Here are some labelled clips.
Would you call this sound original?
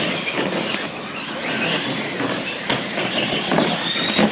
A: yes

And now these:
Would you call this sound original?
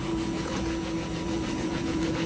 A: no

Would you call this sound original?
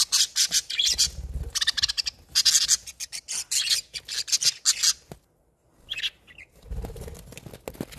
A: yes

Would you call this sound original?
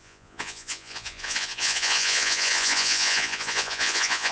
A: no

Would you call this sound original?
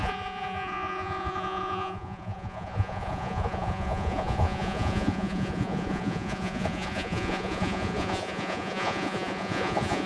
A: no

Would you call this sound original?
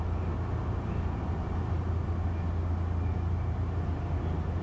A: yes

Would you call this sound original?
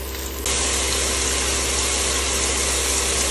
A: yes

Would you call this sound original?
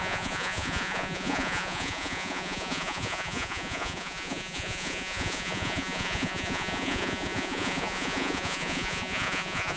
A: no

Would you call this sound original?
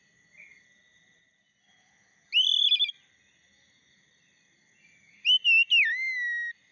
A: yes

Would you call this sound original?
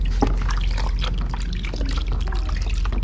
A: yes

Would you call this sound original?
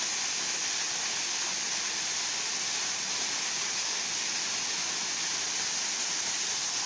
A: yes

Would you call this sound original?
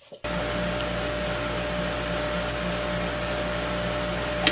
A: yes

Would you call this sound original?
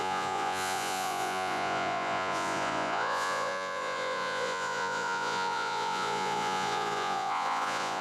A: no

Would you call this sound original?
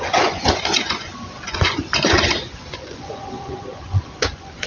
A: no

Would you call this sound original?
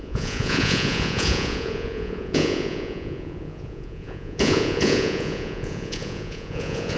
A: no